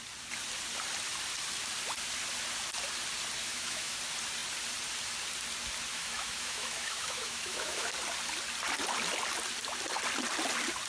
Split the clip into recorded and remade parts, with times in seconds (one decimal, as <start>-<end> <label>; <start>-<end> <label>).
0.0-3.4 recorded; 3.4-4.0 remade; 4.0-5.9 recorded; 5.9-7.9 remade; 7.9-10.9 recorded